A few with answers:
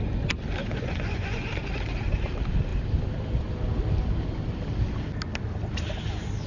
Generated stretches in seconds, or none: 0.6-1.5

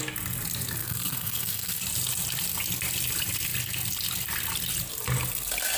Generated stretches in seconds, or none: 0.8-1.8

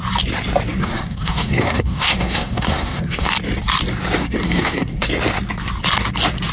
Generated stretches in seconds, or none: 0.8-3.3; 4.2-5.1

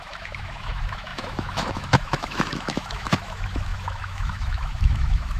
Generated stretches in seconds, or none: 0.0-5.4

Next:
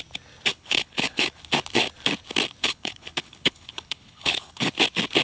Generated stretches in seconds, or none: 0.5-1.4; 2.6-4.7

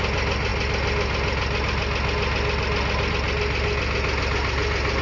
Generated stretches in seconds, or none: none

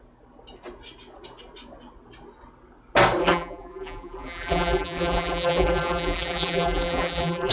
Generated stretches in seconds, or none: 3.2-7.5

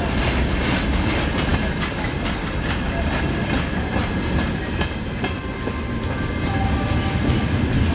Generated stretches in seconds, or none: none